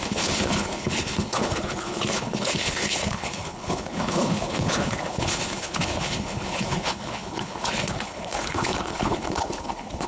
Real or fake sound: fake